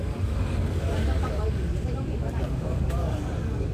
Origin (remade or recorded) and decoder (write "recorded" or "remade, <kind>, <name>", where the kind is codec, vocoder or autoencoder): remade, codec, DAC